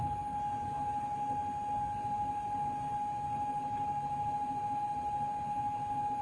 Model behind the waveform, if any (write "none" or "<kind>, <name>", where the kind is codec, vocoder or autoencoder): none